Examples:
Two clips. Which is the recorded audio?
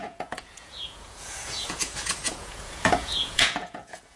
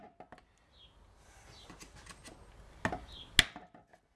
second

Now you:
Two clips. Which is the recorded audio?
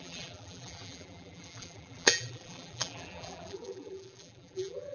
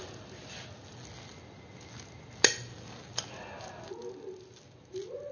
second